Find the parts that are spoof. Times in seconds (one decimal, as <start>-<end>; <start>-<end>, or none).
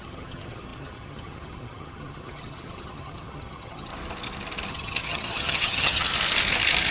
0.0-3.9; 4.7-6.1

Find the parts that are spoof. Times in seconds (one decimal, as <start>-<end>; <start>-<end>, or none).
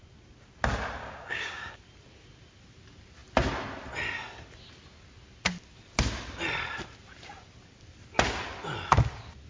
1.0-1.8